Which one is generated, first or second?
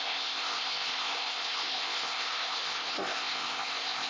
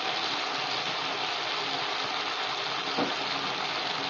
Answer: first